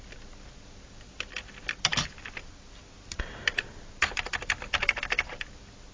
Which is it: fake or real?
real